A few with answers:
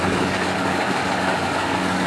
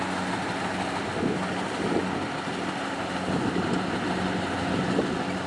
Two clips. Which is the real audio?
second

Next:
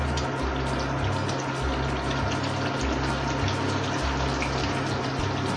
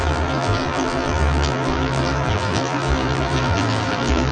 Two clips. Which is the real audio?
first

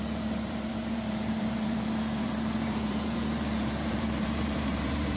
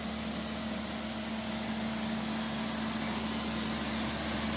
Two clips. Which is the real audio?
second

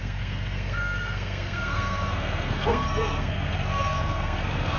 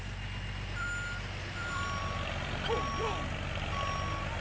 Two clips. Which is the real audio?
second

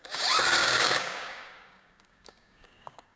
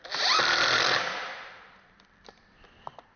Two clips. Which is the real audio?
second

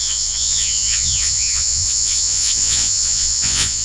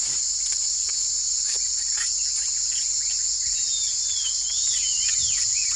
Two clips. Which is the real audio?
second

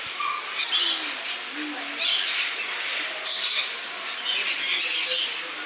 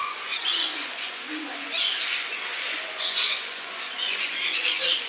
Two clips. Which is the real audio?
first